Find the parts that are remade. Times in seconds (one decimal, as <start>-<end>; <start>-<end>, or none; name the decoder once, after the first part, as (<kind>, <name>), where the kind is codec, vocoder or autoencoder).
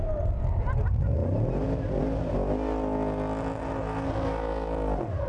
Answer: none